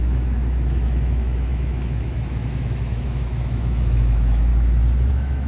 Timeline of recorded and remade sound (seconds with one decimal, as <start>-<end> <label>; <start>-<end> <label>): 0.0-4.5 remade; 4.5-5.1 recorded; 5.1-5.5 remade